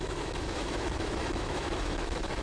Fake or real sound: fake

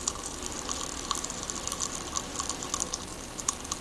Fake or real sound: real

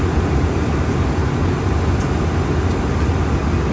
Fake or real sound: real